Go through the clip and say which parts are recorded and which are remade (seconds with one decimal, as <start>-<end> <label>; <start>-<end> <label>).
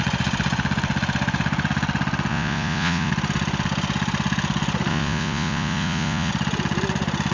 0.0-2.3 recorded; 2.3-3.1 remade; 3.1-4.9 recorded; 4.9-6.3 remade; 6.3-7.3 recorded